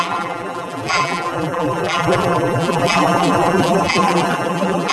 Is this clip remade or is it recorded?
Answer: remade